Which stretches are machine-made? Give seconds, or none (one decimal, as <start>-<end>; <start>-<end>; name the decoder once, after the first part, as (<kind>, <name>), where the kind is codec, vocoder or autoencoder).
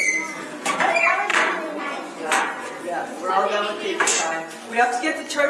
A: 1.3-2.8 (vocoder, Vocos); 4.1-5.5